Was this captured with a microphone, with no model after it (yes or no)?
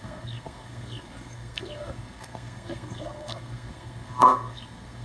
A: no